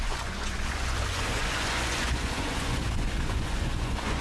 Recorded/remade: remade